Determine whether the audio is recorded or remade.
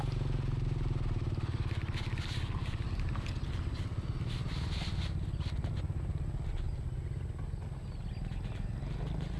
recorded